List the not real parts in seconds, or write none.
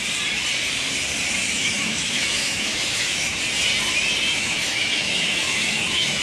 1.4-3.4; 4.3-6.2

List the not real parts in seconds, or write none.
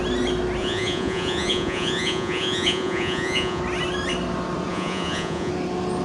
0.6-3.6; 4.7-5.5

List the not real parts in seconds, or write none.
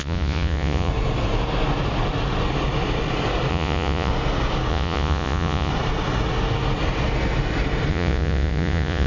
0.0-0.9; 3.5-4.1; 4.7-5.7; 7.9-9.1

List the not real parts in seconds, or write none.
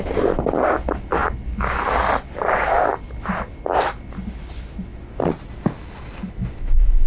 none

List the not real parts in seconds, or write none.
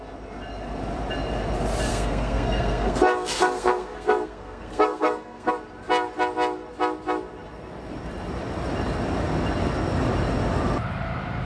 1.9-5.5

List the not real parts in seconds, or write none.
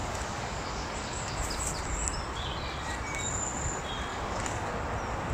0.0-1.4; 4.1-4.7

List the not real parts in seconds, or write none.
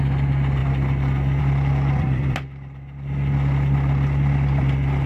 0.0-0.6; 1.4-5.1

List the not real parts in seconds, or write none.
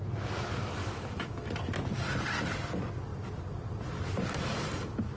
0.8-1.5